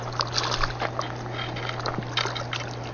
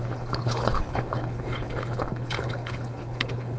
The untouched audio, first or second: first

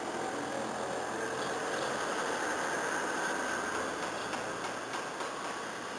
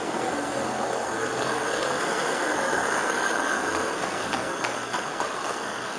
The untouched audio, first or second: first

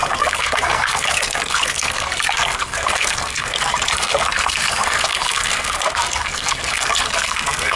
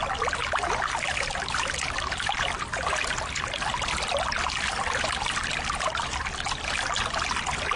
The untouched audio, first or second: second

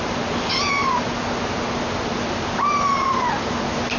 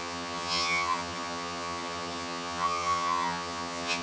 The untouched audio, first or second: first